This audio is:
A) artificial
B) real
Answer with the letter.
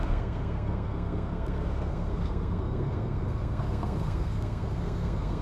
A